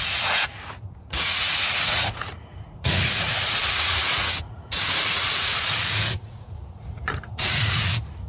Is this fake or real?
fake